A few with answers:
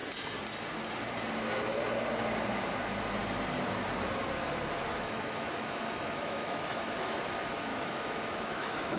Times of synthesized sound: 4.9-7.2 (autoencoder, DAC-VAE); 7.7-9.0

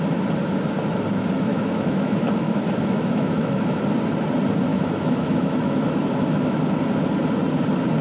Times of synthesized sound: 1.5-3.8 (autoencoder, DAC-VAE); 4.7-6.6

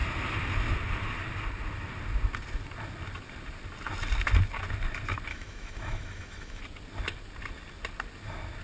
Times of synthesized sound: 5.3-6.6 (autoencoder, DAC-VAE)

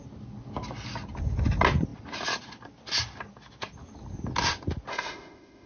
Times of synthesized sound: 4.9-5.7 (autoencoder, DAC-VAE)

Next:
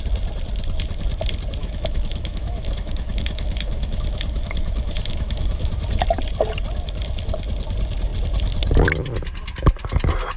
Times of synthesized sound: 1.6-5.7 (autoencoder, DAC-VAE)

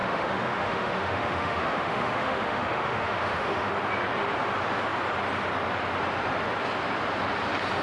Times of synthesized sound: 0.0-3.7 (autoencoder, DAC-VAE)

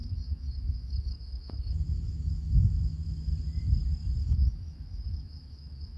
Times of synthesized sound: 0.0-3.3 (autoencoder, DAC-VAE); 4.2-6.0

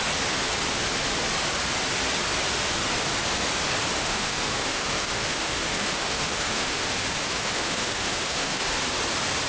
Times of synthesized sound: 4.0-8.6 (autoencoder, DAC-VAE)